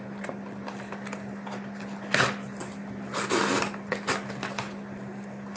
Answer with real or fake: real